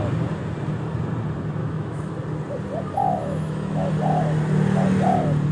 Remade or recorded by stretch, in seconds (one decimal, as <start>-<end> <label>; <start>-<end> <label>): 0.0-1.6 recorded; 1.6-2.1 remade; 2.1-3.2 recorded; 3.2-3.9 remade; 3.9-5.5 recorded